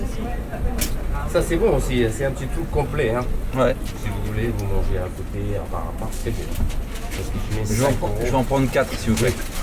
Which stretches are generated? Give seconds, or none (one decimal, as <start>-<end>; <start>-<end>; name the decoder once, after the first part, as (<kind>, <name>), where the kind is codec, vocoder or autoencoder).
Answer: none